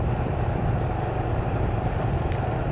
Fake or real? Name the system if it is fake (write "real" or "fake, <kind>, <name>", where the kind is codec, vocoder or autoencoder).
real